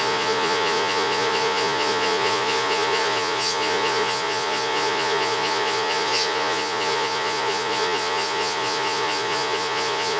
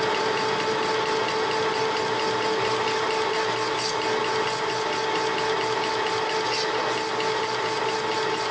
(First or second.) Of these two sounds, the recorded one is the second